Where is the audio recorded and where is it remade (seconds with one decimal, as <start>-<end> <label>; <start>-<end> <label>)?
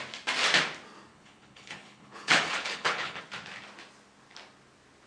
0.0-1.1 recorded; 1.1-3.2 remade; 3.2-5.1 recorded